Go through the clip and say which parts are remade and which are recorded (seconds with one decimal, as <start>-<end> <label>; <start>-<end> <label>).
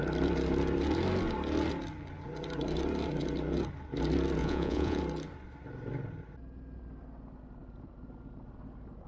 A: 0.0-4.4 recorded; 4.4-5.0 remade; 5.0-9.1 recorded